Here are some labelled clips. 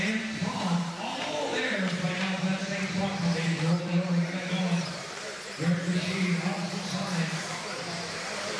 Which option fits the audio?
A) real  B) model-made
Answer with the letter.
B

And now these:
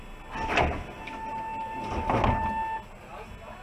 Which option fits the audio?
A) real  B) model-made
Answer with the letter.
A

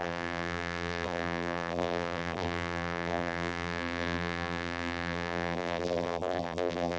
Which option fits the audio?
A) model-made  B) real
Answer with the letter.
A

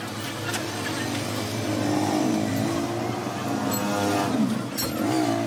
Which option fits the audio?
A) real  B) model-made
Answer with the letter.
A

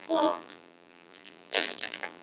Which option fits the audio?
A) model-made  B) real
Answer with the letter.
A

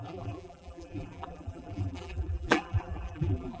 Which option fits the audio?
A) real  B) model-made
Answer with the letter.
B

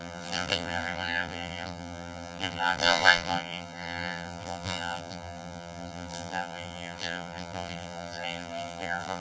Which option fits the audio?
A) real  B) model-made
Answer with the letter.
B